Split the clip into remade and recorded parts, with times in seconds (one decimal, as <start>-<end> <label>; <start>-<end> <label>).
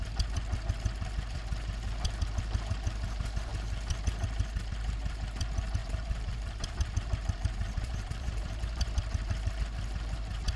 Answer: 0.0-5.8 recorded; 5.8-9.5 remade; 9.5-10.6 recorded